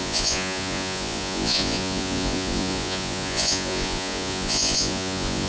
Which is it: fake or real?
fake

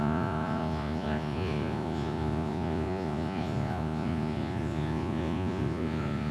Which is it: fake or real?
fake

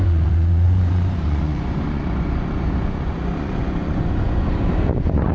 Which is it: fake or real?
fake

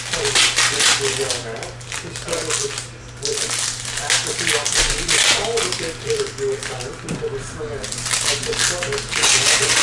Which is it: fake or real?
real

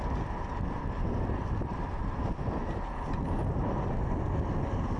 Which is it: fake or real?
real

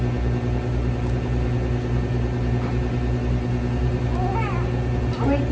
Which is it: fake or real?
real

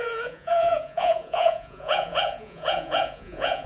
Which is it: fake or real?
fake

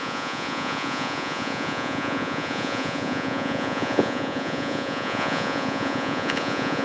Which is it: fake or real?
fake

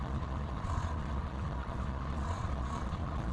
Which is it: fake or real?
fake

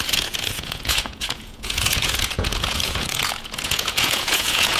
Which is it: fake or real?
fake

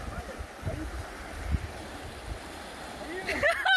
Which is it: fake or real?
real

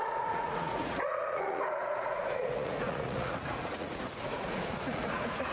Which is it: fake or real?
fake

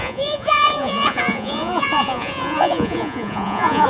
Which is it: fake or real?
fake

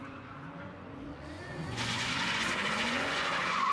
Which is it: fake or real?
fake